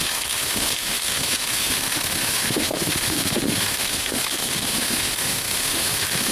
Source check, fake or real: fake